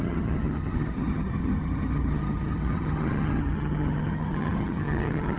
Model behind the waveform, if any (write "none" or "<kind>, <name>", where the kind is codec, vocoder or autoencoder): vocoder, HiFi-GAN